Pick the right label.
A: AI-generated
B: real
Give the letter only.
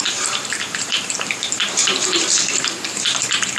A